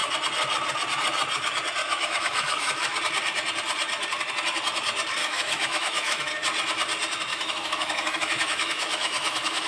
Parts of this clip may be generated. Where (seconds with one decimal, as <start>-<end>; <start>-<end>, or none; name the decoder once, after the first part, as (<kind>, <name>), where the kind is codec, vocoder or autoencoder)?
1.8-3.0 (autoencoder, DAC-VAE); 5.2-6.3; 7.3-9.7